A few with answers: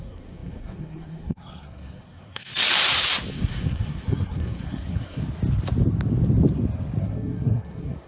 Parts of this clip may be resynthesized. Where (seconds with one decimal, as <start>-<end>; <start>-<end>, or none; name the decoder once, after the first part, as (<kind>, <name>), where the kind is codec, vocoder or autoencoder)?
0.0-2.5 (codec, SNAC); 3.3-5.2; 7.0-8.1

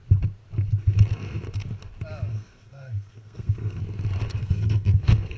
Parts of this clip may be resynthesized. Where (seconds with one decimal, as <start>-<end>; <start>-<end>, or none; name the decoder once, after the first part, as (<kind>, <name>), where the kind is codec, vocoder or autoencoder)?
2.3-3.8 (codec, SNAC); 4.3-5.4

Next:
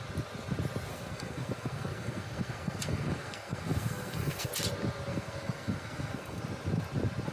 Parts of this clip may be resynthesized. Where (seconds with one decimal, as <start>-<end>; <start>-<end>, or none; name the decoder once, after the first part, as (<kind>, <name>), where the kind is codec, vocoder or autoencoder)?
0.9-4.5 (codec, SNAC); 5.1-6.4

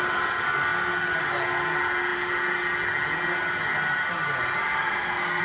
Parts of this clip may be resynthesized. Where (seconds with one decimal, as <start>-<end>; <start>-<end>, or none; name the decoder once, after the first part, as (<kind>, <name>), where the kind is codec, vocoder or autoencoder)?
4.7-5.4 (codec, SNAC)